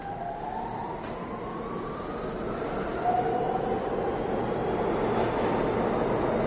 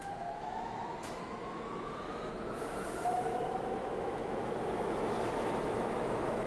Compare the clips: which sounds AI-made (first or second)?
second